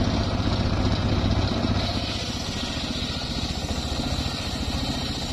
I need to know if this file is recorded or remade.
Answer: recorded